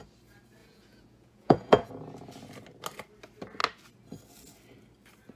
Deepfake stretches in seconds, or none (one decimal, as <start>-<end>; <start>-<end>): 0.6-1.9